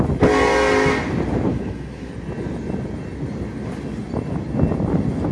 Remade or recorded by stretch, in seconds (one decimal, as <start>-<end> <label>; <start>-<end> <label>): 0.0-1.5 recorded; 1.5-2.1 remade; 2.1-5.3 recorded